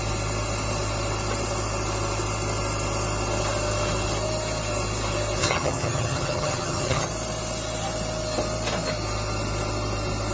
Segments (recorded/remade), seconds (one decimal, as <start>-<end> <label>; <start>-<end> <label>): 0.0-5.4 recorded; 5.4-7.1 remade; 7.1-10.3 recorded